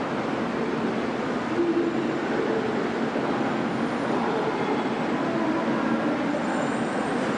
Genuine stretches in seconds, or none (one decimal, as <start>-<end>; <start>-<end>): 0.0-6.5; 7.0-7.4